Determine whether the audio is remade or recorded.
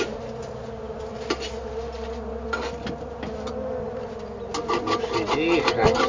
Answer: recorded